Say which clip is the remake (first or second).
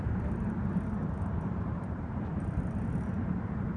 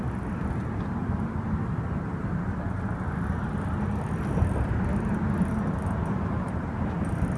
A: first